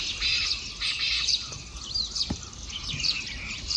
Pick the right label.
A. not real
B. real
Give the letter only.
B